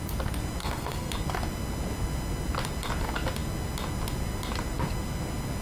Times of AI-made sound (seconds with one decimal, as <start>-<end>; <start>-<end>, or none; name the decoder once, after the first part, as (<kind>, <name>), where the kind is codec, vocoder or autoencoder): 0.6-1.1 (codec, SNAC)